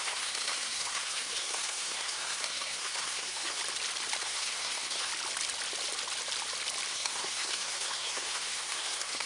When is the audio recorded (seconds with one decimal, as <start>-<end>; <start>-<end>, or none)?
3.6-4.2; 5.1-6.9